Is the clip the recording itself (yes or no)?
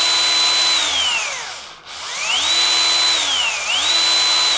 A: yes